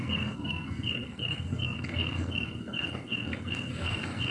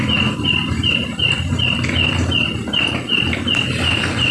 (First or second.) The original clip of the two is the second